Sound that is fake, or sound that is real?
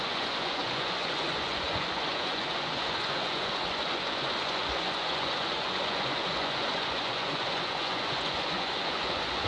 fake